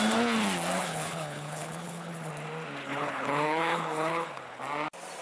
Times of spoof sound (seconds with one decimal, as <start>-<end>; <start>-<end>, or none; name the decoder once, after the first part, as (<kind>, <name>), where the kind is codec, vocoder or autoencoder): 0.8-2.3 (codec, HILCodec); 2.8-4.6